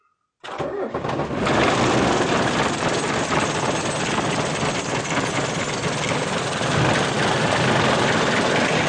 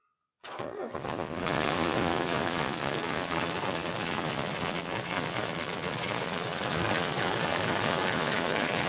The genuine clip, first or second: first